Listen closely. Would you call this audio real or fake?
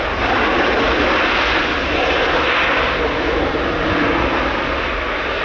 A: real